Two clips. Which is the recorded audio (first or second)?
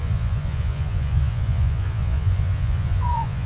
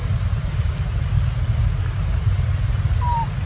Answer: second